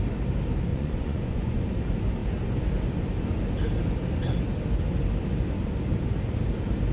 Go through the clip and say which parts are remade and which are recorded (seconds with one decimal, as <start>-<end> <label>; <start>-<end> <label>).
0.0-0.7 recorded; 0.7-1.6 remade; 1.6-6.9 recorded